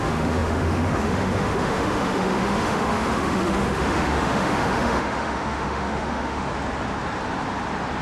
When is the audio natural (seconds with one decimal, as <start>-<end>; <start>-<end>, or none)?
6.4-8.0